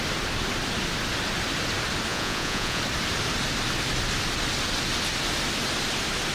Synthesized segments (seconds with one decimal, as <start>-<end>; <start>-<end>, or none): 2.1-2.8